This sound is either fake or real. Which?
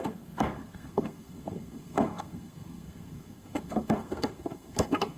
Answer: fake